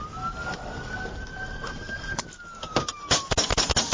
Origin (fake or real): real